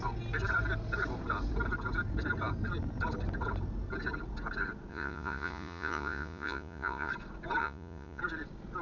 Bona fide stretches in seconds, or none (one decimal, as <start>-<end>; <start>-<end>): 0.0-4.9; 7.1-7.6; 8.2-8.8